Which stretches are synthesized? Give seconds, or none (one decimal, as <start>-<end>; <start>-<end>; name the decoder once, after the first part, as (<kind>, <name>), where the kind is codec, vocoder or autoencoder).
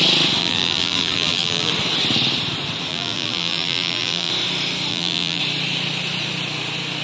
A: 0.4-1.7 (vocoder, BigVGAN v2); 2.9-4.3; 4.9-5.4